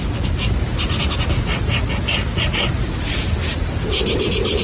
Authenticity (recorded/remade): recorded